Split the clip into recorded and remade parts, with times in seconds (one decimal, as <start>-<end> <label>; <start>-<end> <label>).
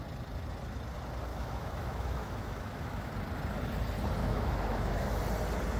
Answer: 0.0-1.3 recorded; 1.3-3.1 remade; 3.1-4.2 recorded; 4.2-5.2 remade; 5.2-5.8 recorded